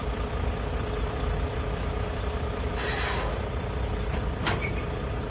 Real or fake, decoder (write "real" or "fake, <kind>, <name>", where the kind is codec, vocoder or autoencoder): real